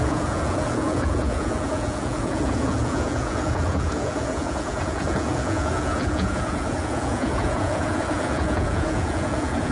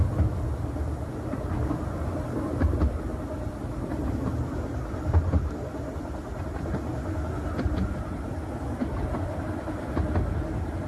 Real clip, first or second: second